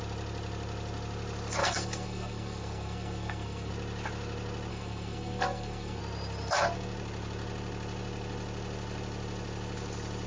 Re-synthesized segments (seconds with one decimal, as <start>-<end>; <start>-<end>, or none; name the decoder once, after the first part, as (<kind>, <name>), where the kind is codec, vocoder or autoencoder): 1.6-3.7 (codec, SNAC); 4.7-6.0